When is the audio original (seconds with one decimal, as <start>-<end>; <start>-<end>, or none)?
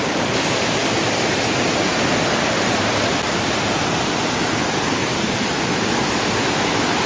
0.0-5.0; 5.7-7.1